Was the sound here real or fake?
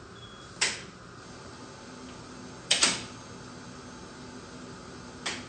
real